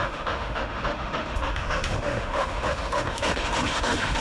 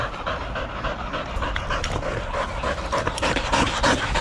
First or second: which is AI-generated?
first